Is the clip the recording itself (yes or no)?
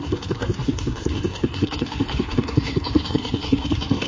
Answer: no